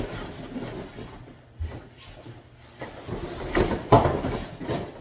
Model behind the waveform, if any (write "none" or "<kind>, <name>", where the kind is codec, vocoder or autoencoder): none